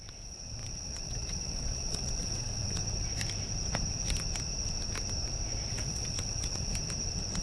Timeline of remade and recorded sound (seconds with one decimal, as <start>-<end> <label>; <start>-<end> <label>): 0.0-2.8 remade; 2.8-5.7 recorded; 5.7-6.7 remade; 6.7-7.4 recorded